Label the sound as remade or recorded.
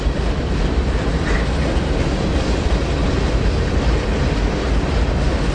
recorded